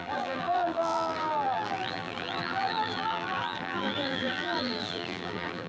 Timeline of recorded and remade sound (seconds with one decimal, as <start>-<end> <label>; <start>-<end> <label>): 0.0-5.7 remade

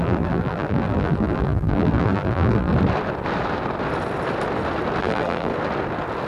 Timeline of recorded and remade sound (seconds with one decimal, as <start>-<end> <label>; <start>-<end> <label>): 0.0-2.7 remade; 2.7-5.0 recorded; 5.0-5.5 remade; 5.5-6.3 recorded

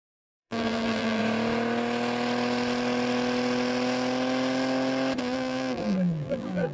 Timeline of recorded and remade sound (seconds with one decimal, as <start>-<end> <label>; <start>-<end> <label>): 0.0-1.2 remade; 1.2-5.2 recorded; 5.2-6.7 remade

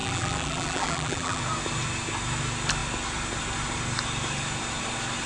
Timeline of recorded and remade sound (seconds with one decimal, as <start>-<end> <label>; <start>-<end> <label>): 0.0-1.4 remade; 1.4-5.3 recorded

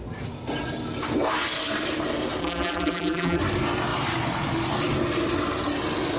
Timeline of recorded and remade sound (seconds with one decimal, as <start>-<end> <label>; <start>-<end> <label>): 0.0-2.4 recorded; 2.4-3.4 remade; 3.4-6.2 recorded

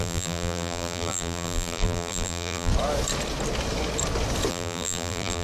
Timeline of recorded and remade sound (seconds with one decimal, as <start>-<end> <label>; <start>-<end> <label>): 0.0-2.7 remade; 2.7-4.5 recorded; 4.5-5.4 remade

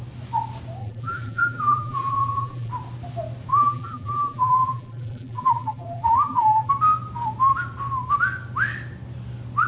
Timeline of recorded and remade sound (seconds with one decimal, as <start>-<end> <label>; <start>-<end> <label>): 0.0-0.8 recorded; 0.8-2.7 remade; 2.7-3.5 recorded; 3.5-6.7 remade; 6.7-9.7 recorded

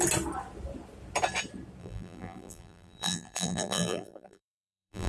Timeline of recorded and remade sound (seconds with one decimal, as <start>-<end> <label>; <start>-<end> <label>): 0.0-1.8 recorded; 1.8-5.1 remade